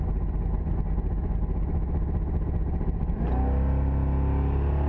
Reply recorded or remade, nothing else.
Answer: recorded